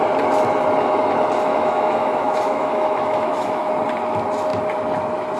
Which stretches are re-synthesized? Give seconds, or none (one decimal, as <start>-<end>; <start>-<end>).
1.5-3.7

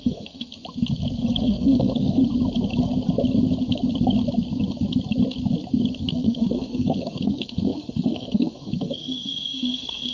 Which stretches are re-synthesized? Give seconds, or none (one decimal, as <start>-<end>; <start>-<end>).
0.0-0.5; 1.4-2.2; 6.0-10.1

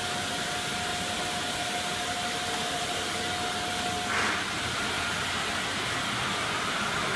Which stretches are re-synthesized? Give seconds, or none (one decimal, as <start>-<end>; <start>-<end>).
4.1-5.2

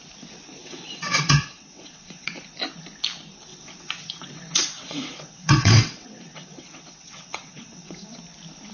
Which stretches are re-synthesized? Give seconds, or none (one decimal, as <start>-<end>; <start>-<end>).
0.6-2.4; 3.5-8.2

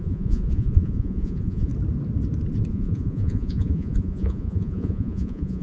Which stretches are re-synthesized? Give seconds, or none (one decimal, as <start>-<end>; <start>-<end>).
0.0-1.7; 2.7-5.6

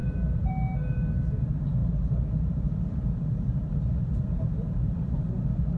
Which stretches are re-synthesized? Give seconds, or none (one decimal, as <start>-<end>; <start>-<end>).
0.0-0.5; 1.8-5.3

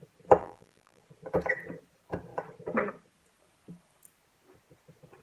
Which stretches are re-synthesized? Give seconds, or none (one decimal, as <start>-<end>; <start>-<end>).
0.4-1.0